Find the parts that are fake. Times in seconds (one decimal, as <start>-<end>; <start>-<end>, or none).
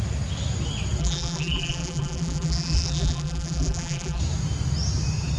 1.0-4.2